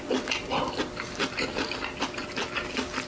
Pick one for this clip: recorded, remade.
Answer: recorded